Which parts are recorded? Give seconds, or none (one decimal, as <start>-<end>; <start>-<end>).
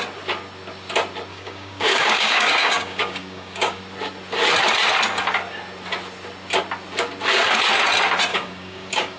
0.0-1.3; 3.8-8.3